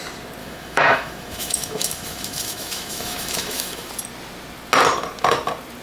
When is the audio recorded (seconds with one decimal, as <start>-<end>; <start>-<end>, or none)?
0.0-0.4; 3.9-5.8

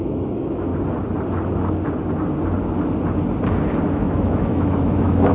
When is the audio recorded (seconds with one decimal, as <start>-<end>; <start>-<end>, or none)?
0.7-3.9

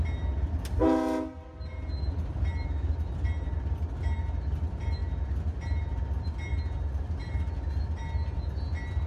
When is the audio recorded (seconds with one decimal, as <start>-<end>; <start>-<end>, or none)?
0.0-9.1